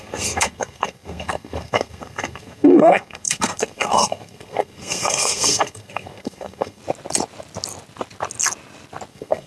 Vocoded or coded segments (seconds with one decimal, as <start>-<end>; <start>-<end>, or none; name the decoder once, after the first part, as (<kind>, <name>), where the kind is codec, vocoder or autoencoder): 0.0-6.8 (codec, SNAC); 9.1-9.5